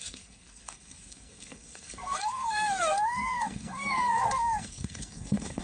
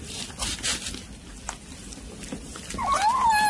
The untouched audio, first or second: second